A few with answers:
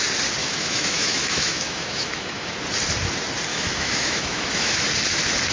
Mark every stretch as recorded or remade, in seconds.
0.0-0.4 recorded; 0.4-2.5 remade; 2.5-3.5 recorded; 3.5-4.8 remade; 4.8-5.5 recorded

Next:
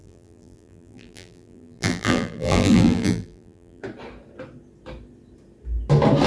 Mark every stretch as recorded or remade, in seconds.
0.0-3.8 remade; 3.8-6.3 recorded

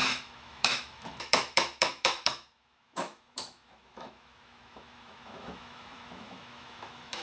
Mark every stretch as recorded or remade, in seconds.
0.0-7.2 remade

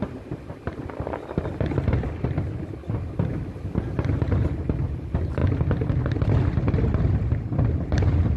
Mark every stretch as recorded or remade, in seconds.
0.0-8.4 recorded

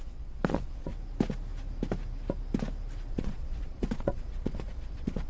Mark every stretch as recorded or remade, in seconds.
0.0-0.9 remade; 0.9-3.1 recorded; 3.1-5.3 remade